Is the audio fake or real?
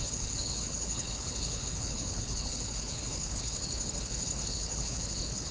fake